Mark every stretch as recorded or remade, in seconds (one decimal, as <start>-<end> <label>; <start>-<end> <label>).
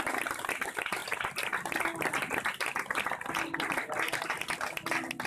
0.0-5.3 recorded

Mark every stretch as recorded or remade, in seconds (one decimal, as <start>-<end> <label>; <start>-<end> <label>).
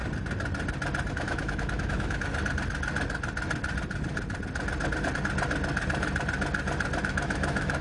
0.0-1.1 recorded; 1.1-2.3 remade; 2.3-7.0 recorded; 7.0-7.8 remade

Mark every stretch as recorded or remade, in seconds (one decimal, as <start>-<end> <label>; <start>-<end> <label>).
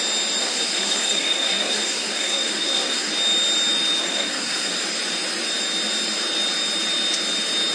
0.0-0.4 recorded; 0.4-3.1 remade; 3.1-4.0 recorded; 4.0-4.7 remade; 4.7-7.7 recorded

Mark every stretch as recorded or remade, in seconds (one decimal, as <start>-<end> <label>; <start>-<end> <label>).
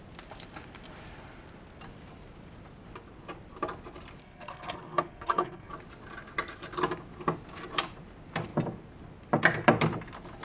0.0-4.2 recorded; 4.2-5.7 remade; 5.7-10.4 recorded